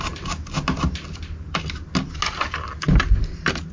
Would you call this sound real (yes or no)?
yes